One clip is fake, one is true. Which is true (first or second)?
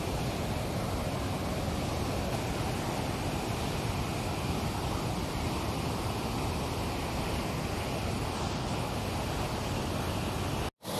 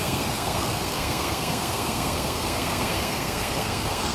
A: first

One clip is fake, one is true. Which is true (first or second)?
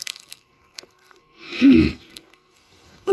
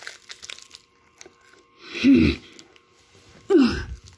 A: second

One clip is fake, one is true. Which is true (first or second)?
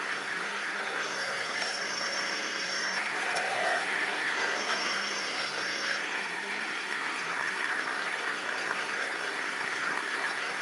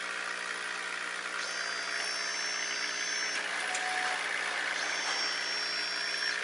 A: second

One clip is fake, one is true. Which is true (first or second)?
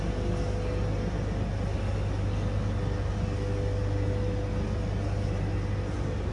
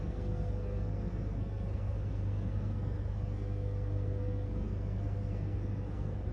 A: first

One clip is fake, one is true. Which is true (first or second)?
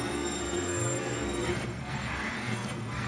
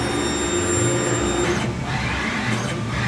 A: second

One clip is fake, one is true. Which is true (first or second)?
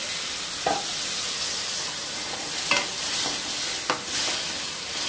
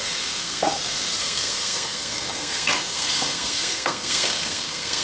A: first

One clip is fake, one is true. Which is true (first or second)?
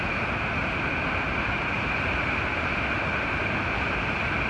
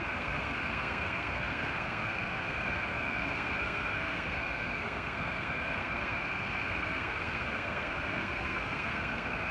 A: first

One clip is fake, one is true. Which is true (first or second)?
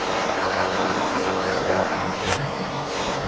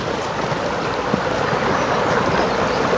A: second